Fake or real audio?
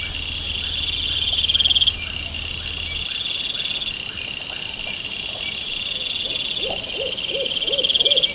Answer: real